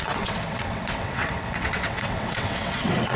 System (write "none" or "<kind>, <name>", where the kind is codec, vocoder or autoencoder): vocoder, WaveNeXt